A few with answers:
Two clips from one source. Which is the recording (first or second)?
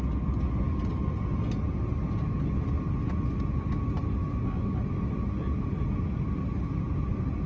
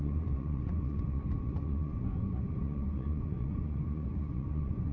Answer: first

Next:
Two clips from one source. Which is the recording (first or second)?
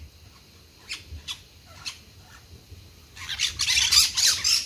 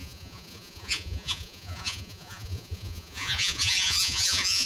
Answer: first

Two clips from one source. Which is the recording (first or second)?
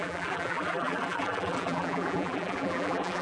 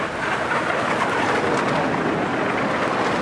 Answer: second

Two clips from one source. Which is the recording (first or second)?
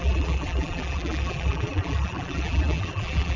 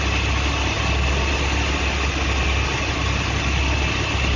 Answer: second